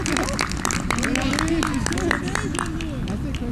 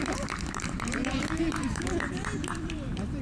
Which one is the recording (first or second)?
first